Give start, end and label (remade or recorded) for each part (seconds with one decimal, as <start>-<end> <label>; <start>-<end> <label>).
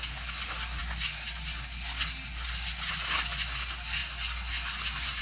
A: 0.0-5.2 recorded